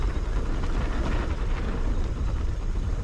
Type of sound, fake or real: real